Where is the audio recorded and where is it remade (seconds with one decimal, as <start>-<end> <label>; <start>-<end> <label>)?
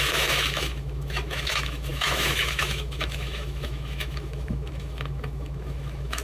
0.0-6.2 remade